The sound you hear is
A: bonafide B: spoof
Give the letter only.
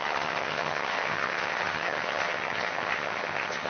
B